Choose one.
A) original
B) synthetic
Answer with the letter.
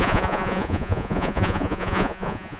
B